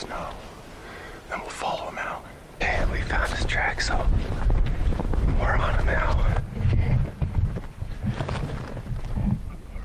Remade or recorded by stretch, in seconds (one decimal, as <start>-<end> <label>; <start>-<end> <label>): 0.0-9.8 recorded